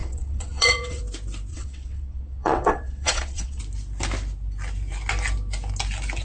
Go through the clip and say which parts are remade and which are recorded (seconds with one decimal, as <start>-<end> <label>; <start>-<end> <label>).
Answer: 0.0-1.0 remade; 1.0-1.5 recorded; 1.5-3.6 remade; 3.6-6.2 recorded